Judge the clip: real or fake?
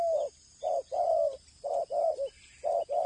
real